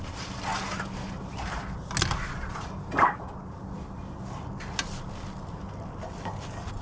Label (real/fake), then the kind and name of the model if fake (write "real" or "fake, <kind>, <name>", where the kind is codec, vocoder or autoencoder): real